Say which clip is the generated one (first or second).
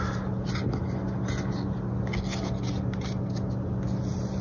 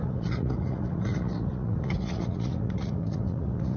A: second